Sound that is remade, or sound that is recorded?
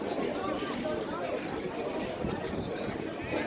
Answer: remade